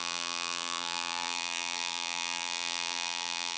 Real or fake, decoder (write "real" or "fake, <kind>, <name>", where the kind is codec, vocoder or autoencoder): fake, vocoder, BigVGAN v2